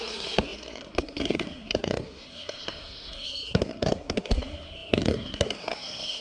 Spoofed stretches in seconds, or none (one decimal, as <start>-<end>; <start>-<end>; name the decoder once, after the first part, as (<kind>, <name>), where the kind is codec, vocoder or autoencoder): 0.0-6.2 (codec, SNAC)